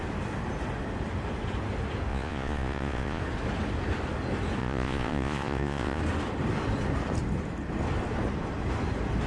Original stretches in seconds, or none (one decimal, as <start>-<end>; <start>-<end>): 0.0-2.1; 3.2-4.6; 6.0-9.3